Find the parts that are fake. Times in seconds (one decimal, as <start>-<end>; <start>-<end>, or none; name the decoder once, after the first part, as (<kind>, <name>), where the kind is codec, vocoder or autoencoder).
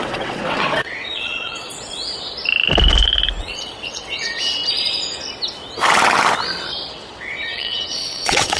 0.0-1.7 (vocoder, WaveNeXt); 3.4-4.6; 6.9-8.6